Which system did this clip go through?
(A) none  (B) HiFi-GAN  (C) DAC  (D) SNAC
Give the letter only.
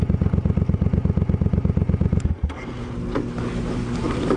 A